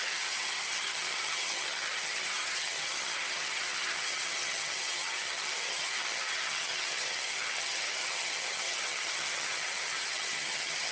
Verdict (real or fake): fake